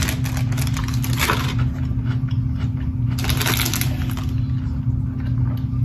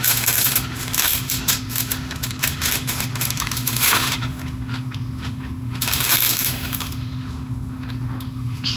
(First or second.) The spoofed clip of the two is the second